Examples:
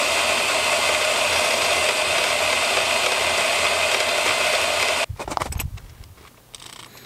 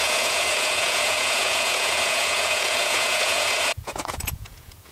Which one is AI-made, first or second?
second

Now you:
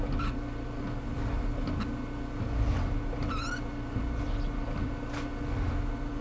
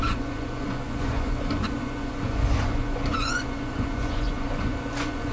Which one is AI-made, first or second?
second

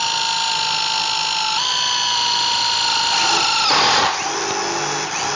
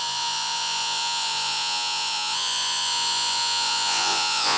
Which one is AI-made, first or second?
second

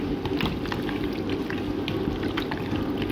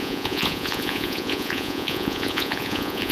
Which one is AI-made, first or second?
second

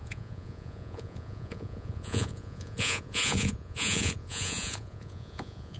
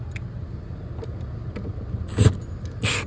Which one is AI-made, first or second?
first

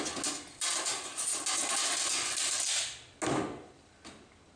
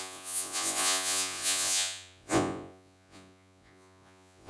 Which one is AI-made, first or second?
second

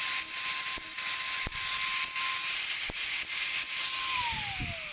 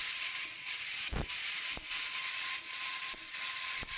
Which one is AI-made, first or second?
second